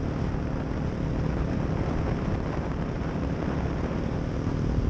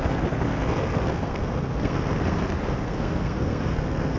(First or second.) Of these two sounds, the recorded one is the first